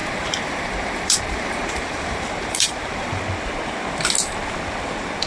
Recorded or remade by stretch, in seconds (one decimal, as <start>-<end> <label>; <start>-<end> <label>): 0.0-3.2 remade; 3.2-5.3 recorded